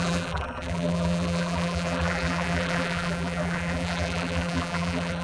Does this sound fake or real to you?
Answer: fake